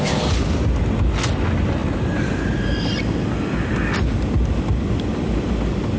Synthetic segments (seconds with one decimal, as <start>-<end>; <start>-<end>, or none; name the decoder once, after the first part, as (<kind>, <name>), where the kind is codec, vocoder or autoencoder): none